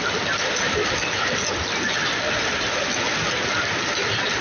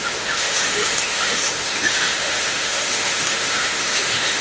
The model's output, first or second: second